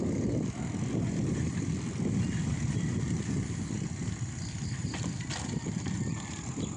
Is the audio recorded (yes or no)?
yes